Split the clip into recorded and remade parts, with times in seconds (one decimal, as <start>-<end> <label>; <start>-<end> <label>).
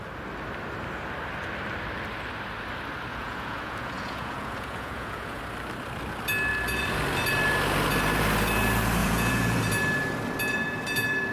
0.0-3.1 recorded; 3.1-5.4 remade; 5.4-9.0 recorded; 9.0-9.6 remade; 9.6-11.3 recorded